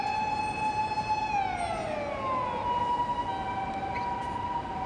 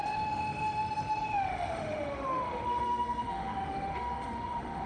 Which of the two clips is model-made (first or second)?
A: second